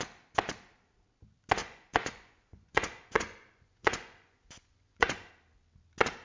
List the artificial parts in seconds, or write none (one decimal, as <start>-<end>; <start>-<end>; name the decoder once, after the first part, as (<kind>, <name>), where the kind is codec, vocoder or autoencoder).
1.6-5.3 (vocoder, Vocos)